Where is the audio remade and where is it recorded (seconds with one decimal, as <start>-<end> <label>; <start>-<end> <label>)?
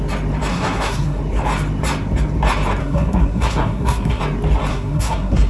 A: 0.0-0.5 recorded; 0.5-1.2 remade; 1.2-2.8 recorded; 2.8-4.2 remade; 4.2-4.7 recorded; 4.7-5.5 remade